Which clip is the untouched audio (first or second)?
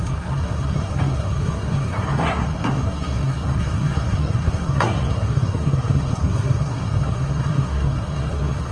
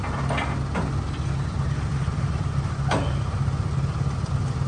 second